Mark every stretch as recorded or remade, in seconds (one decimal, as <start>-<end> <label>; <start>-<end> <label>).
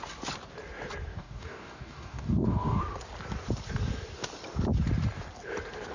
0.0-1.1 recorded; 1.1-2.8 remade; 2.8-5.9 recorded